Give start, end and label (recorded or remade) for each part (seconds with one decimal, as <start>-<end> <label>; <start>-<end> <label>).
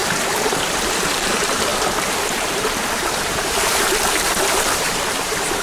0.0-1.1 recorded; 1.1-5.6 remade